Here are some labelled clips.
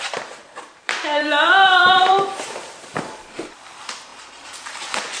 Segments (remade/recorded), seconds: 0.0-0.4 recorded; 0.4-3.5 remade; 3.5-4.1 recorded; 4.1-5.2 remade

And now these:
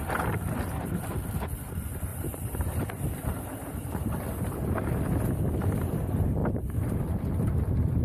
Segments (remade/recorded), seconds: 0.0-2.1 recorded; 2.1-4.3 remade; 4.3-6.4 recorded; 6.4-7.0 remade; 7.0-8.0 recorded

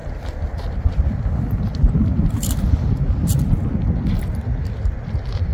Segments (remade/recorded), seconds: 0.0-3.3 remade; 3.3-5.5 recorded

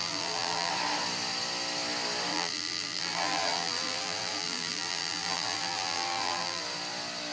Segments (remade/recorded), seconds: 0.0-0.7 remade; 0.7-2.3 recorded; 2.3-6.6 remade; 6.6-7.3 recorded

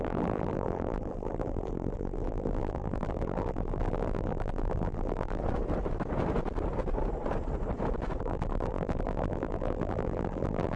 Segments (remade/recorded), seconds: 0.0-5.4 remade; 5.4-8.2 recorded; 8.2-10.8 remade

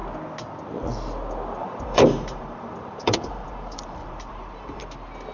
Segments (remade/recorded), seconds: 0.0-1.6 recorded; 1.6-4.8 remade; 4.8-5.3 recorded